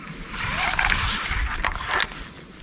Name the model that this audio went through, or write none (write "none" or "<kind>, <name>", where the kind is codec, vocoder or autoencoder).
none